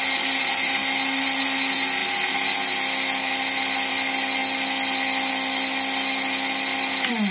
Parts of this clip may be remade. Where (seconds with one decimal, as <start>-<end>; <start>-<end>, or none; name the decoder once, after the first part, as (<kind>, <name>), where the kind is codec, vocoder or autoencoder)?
none

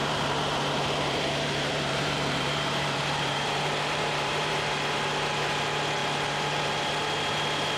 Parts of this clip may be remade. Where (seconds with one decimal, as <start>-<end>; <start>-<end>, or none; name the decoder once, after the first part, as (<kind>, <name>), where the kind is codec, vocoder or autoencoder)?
0.0-4.5 (vocoder, BigVGAN v2); 6.0-6.6